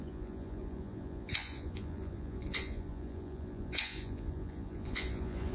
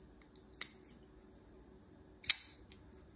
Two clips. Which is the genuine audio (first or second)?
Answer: second